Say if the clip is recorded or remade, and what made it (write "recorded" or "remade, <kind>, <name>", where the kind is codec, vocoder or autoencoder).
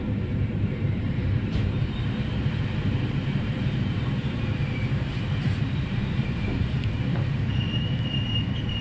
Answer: remade, vocoder, BigVGAN v2